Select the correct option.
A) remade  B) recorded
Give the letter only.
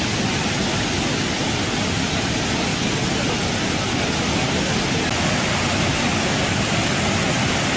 B